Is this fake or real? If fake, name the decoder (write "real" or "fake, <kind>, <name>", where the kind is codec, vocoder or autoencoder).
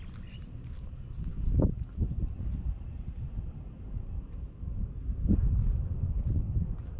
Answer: fake, vocoder, BigVGAN v2